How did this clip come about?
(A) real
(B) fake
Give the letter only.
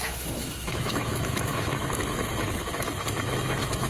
B